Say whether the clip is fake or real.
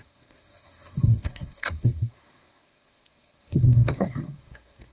fake